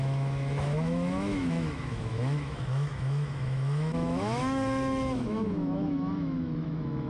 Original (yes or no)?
no